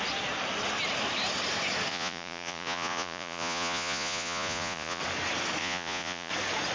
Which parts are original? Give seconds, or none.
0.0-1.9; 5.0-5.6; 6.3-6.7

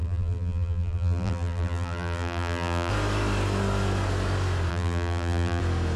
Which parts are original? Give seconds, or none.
2.9-4.7; 5.6-6.0

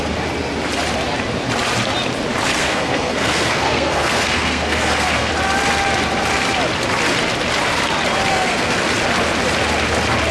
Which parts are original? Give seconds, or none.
0.0-2.5; 5.3-8.3; 8.8-10.3

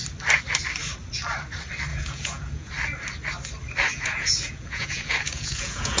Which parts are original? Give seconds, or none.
0.0-1.9; 2.7-3.9